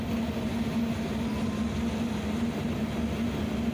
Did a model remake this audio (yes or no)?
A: no